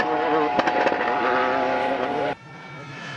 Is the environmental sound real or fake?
real